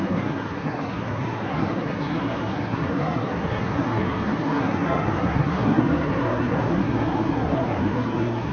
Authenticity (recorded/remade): remade